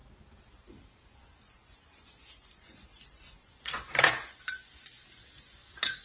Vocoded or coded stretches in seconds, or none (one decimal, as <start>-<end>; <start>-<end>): 0.8-6.0

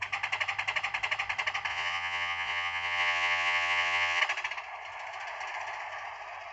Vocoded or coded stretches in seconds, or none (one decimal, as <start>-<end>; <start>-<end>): 1.7-4.2

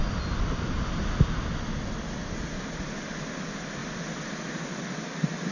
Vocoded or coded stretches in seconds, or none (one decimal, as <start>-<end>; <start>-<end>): none

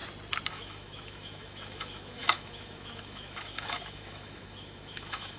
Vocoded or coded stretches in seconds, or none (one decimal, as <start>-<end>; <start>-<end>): 0.5-5.4

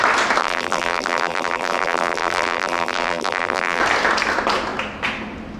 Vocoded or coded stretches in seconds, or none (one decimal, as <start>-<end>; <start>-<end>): 0.4-3.8

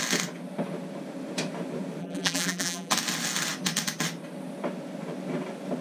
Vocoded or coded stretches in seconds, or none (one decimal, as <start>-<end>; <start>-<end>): 2.0-2.9